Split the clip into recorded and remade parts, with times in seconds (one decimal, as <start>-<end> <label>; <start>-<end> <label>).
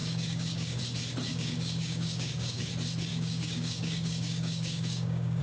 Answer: 0.0-0.8 remade; 0.8-1.3 recorded; 1.3-2.7 remade; 2.7-3.1 recorded; 3.1-5.4 remade